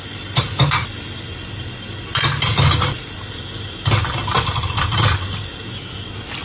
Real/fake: real